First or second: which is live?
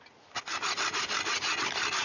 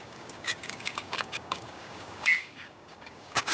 first